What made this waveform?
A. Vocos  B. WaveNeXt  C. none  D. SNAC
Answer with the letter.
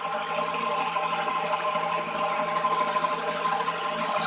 C